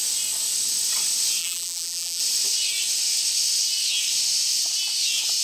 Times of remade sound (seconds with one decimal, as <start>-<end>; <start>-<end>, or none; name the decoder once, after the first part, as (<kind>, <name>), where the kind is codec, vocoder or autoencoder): 1.4-2.2 (vocoder, BigVGAN v2)